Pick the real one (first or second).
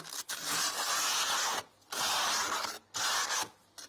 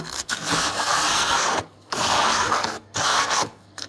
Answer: first